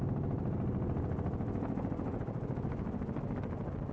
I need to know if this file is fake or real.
real